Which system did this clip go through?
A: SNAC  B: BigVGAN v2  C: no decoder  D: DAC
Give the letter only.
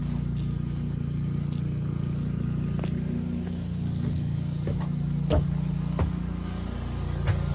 C